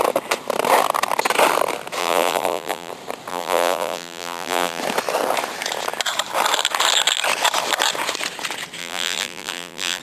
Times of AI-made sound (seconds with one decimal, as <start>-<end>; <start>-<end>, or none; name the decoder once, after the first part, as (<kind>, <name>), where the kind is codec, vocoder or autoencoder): 2.0-2.9 (vocoder, BigVGAN v2); 3.3-4.8; 8.8-10.0